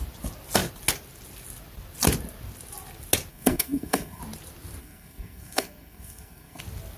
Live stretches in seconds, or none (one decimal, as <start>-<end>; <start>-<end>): 0.0-3.3; 4.2-4.8; 6.6-7.0